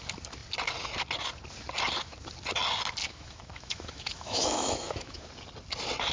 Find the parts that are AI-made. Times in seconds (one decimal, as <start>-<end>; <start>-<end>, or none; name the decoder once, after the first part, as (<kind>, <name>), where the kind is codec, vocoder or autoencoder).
3.0-5.3 (autoencoder, DAC-VAE)